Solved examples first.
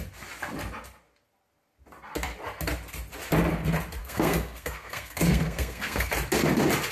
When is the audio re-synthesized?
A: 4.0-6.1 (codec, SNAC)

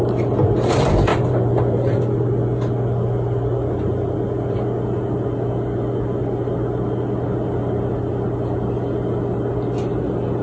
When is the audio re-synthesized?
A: 1.1-2.0 (vocoder, BigVGAN v2)

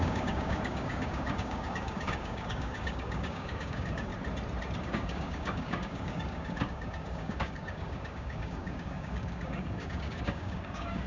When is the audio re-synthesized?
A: 0.0-4.1 (codec, DAC); 4.8-11.1

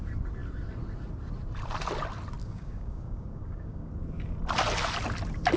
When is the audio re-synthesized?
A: 2.4-3.9 (codec, DAC)

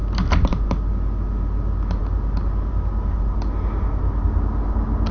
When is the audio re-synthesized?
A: none

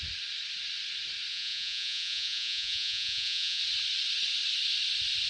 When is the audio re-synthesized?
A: 1.3-3.6 (vocoder, Vocos)